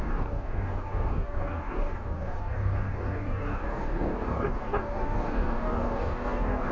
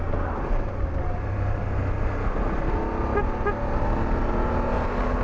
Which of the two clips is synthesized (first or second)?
first